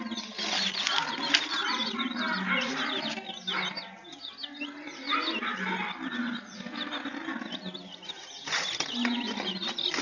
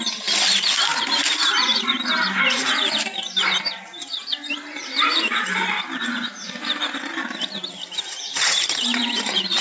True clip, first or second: first